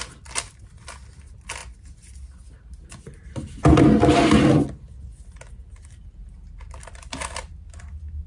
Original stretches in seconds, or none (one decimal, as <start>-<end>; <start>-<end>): 0.0-8.3